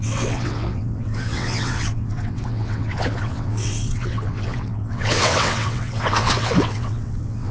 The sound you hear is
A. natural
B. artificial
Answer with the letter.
B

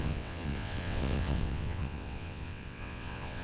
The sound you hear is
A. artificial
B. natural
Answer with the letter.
A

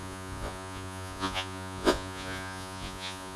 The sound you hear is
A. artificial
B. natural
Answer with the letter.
A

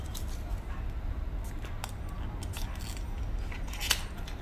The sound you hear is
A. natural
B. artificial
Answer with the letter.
A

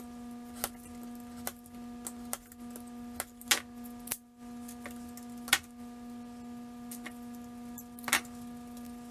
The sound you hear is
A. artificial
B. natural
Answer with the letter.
B